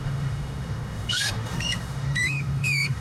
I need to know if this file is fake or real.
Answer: fake